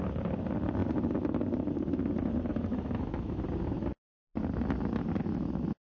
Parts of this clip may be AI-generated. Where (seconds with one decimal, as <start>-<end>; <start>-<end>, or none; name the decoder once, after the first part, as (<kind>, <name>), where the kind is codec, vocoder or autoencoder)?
2.5-3.4 (autoencoder, DAC-VAE)

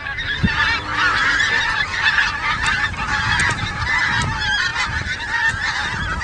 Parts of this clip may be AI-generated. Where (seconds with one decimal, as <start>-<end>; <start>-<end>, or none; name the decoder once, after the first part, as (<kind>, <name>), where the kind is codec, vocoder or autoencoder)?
none

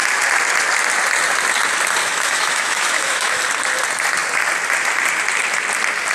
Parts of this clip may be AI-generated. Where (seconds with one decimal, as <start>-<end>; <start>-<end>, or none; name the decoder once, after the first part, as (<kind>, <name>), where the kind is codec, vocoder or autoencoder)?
2.0-3.4 (autoencoder, DAC-VAE)

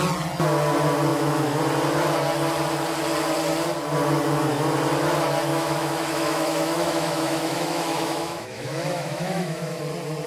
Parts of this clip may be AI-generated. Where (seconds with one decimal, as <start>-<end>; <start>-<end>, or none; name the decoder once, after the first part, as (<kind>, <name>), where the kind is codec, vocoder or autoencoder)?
1.1-1.6 (autoencoder, DAC-VAE); 5.5-9.8

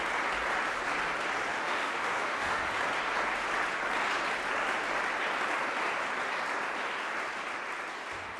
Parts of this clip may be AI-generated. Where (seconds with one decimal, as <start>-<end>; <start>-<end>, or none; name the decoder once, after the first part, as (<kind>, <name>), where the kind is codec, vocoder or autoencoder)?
1.5-2.7 (autoencoder, DAC-VAE)

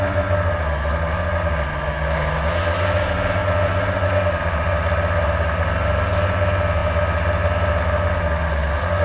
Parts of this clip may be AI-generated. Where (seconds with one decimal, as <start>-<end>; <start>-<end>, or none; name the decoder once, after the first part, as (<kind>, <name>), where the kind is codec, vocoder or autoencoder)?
none

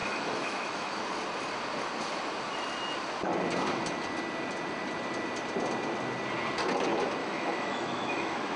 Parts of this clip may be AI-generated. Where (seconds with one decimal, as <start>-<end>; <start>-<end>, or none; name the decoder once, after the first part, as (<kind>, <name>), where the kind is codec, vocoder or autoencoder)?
0.0-1.0 (autoencoder, DAC-VAE); 7.2-8.6

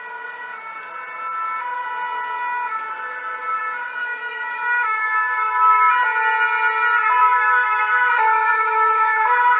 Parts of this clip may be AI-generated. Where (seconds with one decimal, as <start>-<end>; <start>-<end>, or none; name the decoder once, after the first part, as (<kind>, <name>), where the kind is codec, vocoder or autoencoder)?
4.0-5.9 (autoencoder, DAC-VAE); 7.2-9.6